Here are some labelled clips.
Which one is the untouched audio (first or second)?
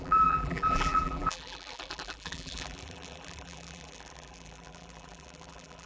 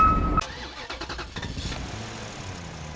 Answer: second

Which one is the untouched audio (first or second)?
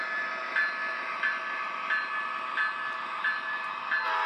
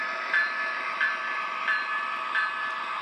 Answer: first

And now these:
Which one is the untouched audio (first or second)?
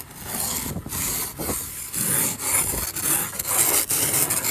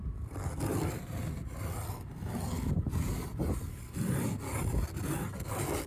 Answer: first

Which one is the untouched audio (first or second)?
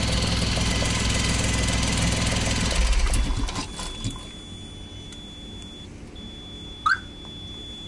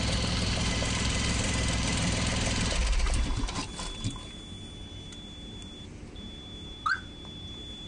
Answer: first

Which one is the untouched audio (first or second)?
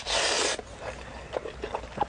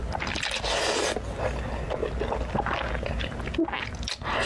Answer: second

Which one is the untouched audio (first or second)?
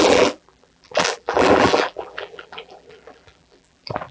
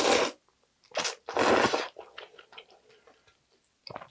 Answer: second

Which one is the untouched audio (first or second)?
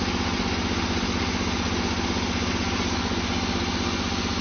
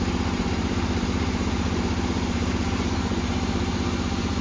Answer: first